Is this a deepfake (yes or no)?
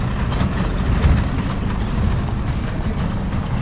no